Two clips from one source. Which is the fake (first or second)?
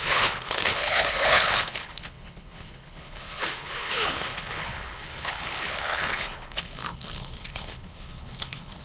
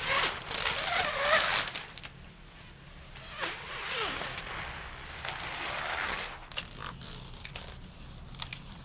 first